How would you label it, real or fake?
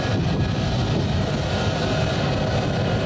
real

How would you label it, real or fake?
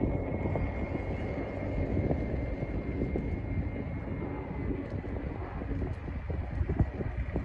real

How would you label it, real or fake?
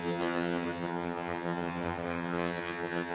fake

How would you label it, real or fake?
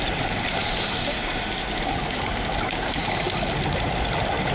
real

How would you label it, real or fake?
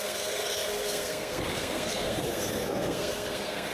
fake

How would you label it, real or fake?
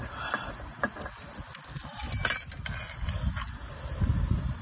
real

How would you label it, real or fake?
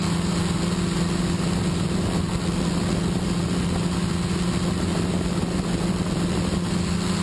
real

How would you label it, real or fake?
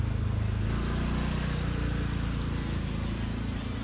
real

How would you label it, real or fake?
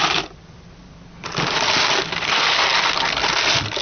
real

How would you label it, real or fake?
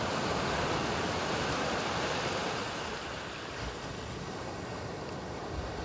real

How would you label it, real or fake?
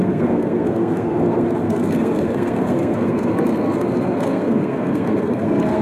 fake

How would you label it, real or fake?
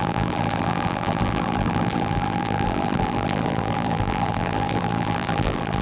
fake